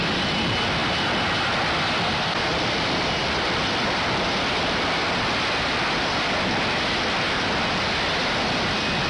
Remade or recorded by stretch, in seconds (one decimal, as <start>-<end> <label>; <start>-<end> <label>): 0.0-9.1 recorded